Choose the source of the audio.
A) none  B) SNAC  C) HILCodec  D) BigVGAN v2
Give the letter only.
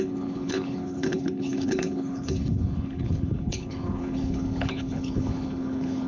C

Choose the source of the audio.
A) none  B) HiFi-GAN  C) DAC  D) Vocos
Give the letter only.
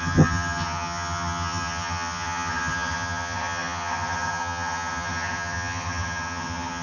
B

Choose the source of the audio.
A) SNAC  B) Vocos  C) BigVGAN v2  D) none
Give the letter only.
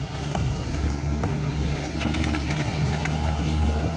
A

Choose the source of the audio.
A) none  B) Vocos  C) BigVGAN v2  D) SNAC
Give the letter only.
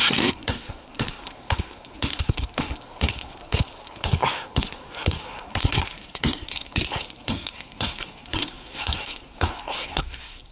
D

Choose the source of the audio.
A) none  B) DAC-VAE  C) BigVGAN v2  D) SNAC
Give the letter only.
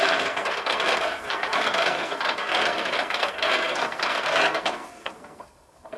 D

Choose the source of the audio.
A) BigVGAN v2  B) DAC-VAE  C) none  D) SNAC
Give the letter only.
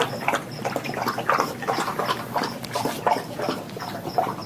A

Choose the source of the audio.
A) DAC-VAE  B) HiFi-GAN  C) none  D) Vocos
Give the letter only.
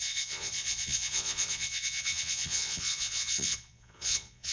D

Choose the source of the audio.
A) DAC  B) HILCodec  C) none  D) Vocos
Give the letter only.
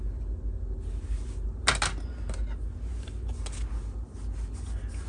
C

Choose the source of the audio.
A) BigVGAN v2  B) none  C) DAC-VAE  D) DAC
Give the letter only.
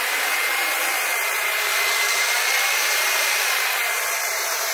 A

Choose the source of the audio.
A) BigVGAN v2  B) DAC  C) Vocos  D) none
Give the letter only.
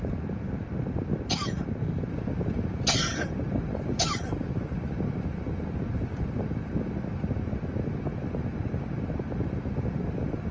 D